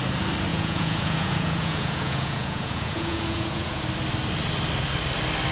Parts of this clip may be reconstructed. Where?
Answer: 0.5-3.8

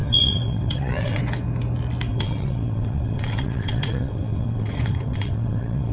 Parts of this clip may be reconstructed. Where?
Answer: 0.0-1.2; 2.1-5.9

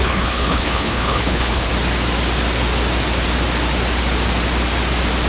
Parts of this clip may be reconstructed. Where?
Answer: 0.0-1.7

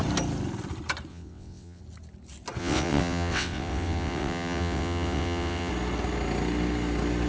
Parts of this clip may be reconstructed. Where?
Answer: 1.1-1.8; 2.6-5.7